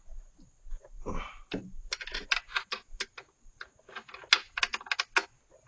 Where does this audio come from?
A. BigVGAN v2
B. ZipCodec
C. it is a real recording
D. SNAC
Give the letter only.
C